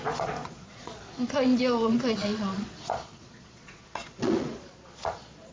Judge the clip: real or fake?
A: fake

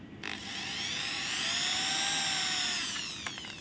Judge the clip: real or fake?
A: real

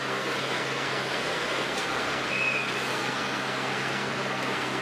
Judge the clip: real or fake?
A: fake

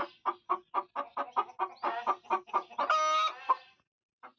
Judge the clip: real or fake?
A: real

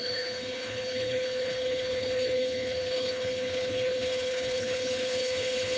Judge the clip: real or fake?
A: fake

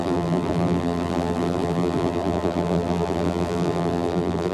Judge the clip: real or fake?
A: fake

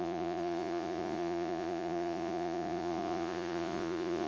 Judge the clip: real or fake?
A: fake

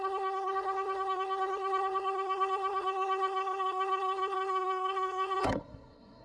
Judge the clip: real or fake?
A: fake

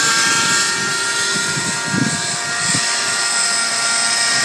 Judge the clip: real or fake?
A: real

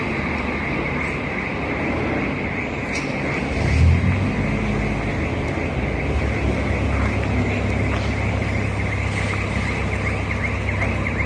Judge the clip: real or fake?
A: real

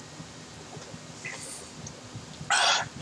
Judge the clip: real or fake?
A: real